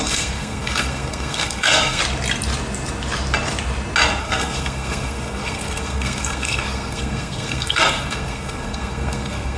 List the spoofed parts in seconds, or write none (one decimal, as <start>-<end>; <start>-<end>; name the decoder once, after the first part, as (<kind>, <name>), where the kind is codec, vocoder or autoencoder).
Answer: 0.0-2.0 (codec, SNAC); 4.2-9.6